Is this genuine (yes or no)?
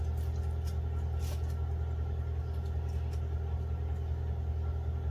yes